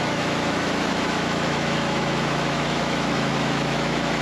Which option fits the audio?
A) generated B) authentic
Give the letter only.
A